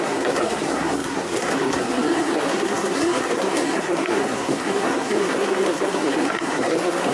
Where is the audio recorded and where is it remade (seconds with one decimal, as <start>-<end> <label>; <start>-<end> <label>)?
0.0-7.1 remade